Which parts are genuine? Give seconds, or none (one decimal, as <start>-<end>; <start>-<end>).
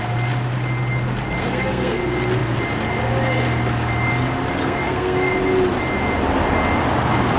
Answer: 0.0-1.4; 2.0-4.6; 5.3-7.4